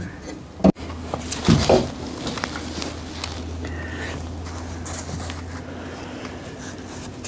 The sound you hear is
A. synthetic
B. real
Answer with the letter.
B